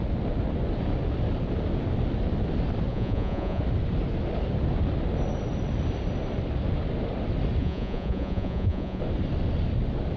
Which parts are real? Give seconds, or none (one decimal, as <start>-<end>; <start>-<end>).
0.0-2.9; 3.6-7.6; 9.0-10.2